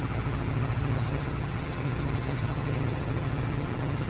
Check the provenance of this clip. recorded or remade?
remade